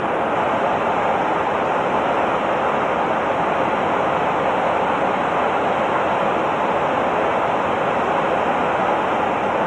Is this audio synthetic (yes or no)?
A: no